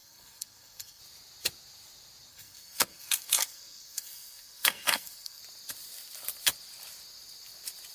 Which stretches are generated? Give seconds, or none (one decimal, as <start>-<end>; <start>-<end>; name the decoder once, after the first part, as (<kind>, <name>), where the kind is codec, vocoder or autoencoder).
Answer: 0.0-1.0 (codec, SNAC); 2.3-5.4

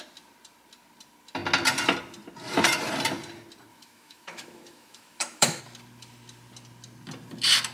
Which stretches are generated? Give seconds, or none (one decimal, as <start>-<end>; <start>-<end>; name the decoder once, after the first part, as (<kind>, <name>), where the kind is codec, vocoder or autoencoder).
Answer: 3.7-5.6 (autoencoder, DAC-VAE)

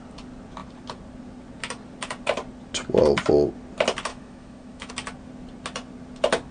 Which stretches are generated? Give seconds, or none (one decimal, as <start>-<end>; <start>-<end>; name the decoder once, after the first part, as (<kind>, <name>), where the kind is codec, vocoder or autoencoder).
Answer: 4.1-4.9 (autoencoder, DAC-VAE)